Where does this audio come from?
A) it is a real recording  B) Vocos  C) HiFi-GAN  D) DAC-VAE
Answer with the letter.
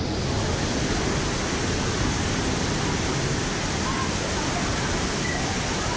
A